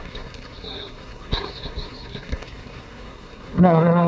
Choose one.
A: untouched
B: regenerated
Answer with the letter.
B